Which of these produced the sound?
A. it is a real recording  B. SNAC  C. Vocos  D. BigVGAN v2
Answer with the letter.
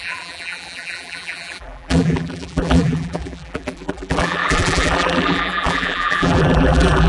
D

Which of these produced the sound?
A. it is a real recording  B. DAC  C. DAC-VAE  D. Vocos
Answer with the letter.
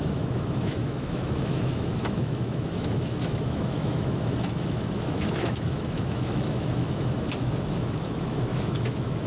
C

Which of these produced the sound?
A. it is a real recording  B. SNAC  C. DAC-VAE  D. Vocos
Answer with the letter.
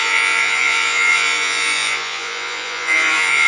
D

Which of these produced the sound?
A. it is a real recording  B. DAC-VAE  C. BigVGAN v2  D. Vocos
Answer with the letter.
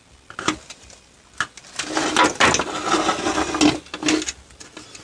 A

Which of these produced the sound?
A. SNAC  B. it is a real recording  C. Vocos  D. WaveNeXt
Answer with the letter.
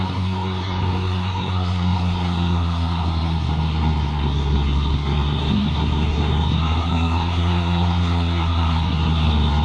A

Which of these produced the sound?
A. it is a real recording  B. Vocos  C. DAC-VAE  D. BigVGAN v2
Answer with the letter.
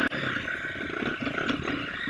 A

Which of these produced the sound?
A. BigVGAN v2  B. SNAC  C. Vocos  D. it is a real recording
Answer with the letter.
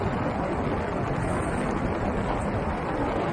D